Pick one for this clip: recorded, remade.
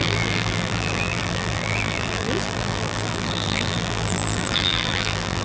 remade